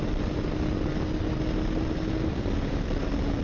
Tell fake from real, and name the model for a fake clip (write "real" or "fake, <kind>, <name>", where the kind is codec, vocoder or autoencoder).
real